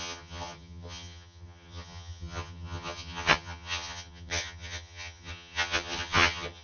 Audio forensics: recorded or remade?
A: remade